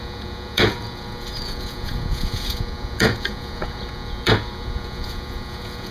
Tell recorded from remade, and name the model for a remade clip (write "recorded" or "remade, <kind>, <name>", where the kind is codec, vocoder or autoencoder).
remade, vocoder, Vocos